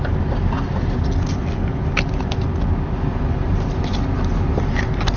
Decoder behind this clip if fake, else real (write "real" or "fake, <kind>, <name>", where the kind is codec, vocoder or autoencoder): real